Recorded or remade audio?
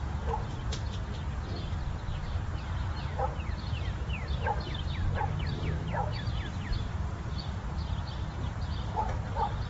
remade